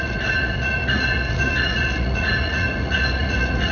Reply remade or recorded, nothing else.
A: remade